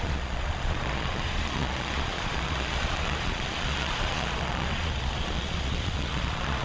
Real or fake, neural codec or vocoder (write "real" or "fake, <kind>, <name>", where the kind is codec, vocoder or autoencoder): fake, vocoder, Vocos